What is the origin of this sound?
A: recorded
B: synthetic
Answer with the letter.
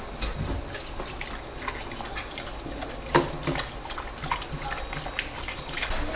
A